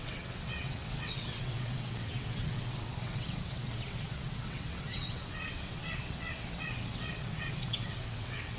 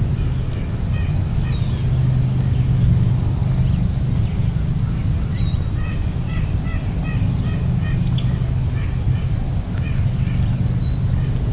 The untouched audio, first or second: second